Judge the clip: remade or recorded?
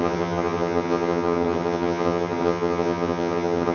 remade